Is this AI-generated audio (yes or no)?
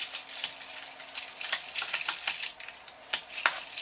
no